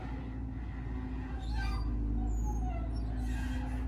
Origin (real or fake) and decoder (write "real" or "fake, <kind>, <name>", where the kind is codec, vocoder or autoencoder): real